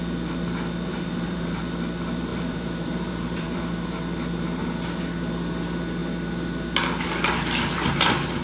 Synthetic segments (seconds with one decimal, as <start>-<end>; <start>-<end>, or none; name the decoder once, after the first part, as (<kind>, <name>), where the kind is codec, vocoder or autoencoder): 0.9-1.6 (vocoder, BigVGAN v2); 2.3-3.6